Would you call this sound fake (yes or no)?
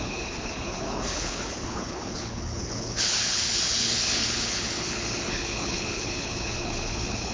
yes